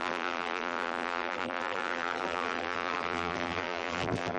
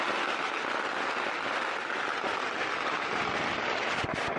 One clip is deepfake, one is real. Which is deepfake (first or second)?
first